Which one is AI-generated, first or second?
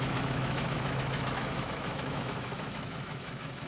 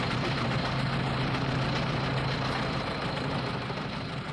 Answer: first